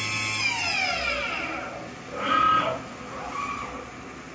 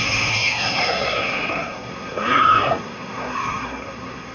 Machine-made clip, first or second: second